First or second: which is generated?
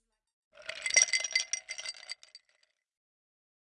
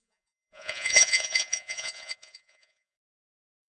second